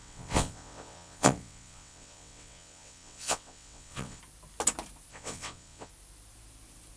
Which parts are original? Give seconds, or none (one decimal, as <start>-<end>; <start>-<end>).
4.2-5.1; 5.9-7.0